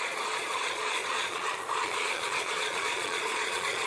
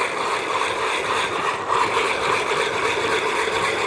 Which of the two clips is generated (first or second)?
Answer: first